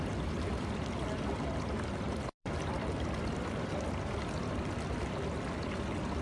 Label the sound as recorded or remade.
remade